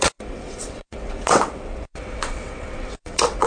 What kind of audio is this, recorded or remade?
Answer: remade